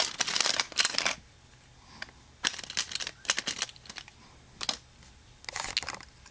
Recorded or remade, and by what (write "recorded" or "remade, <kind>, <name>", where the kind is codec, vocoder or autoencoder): recorded